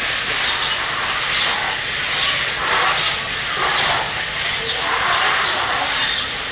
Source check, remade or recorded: recorded